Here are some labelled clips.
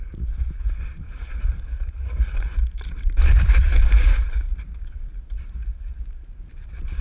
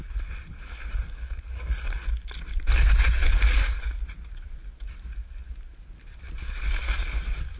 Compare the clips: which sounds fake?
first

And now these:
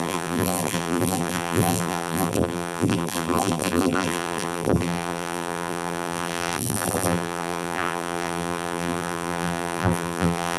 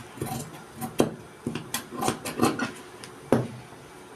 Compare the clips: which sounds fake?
first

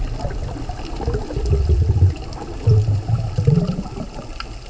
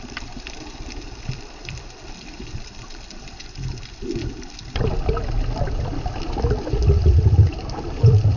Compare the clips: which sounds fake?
second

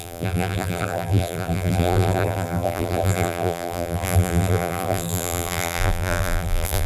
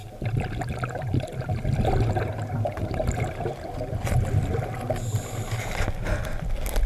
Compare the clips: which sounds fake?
first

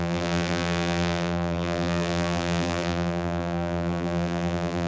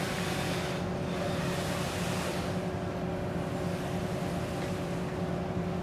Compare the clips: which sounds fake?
first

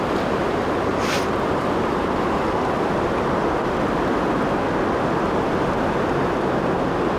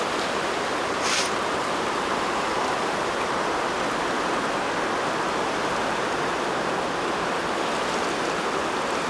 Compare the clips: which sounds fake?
second